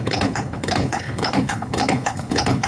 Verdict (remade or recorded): remade